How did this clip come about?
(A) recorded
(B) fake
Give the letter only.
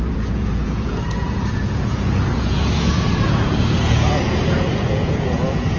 B